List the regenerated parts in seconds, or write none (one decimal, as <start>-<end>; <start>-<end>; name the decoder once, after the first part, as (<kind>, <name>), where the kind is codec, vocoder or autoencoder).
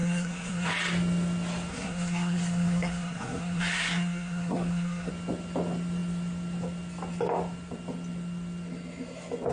0.0-0.7 (codec, SNAC); 1.7-5.1